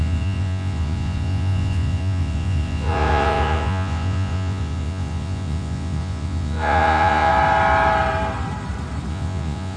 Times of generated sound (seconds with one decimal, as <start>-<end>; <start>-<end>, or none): 0.0-7.3; 9.1-9.8